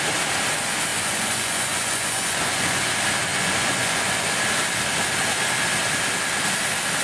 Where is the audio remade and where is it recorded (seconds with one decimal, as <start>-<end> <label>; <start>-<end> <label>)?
0.0-0.9 recorded; 0.9-2.9 remade; 2.9-3.3 recorded; 3.3-4.4 remade; 4.4-7.0 recorded